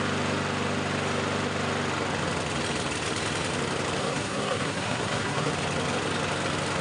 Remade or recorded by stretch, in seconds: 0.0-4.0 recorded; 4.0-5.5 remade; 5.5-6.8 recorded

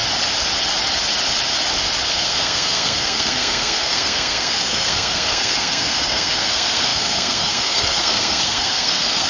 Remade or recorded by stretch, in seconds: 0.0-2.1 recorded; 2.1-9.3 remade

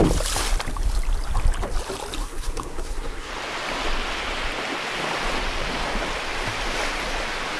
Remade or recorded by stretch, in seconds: 0.0-2.2 recorded; 2.2-3.3 remade; 3.3-7.6 recorded

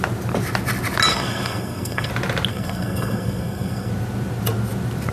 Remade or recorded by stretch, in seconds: 0.0-1.1 recorded; 1.1-2.1 remade; 2.1-2.5 recorded; 2.5-3.9 remade; 3.9-5.1 recorded

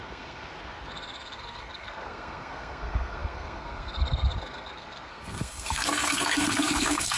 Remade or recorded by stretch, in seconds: 0.0-7.2 remade

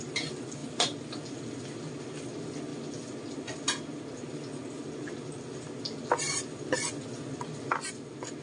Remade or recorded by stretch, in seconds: 0.0-8.4 recorded

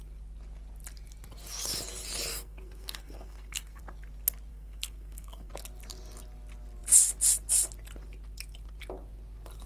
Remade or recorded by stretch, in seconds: 0.0-2.3 recorded; 2.3-3.8 remade; 3.8-4.5 recorded; 4.5-5.5 remade; 5.5-9.7 recorded

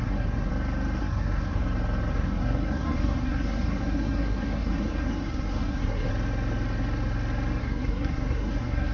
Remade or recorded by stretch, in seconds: 0.0-0.5 remade; 0.5-1.0 recorded; 1.0-1.6 remade; 1.6-2.1 recorded; 2.1-6.1 remade; 6.1-7.6 recorded; 7.6-8.9 remade